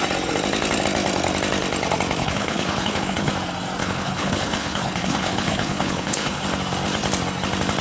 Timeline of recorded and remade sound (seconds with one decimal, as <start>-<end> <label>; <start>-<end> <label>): 0.0-2.2 recorded; 2.2-3.3 remade; 3.3-3.8 recorded; 3.8-6.4 remade; 6.4-7.8 recorded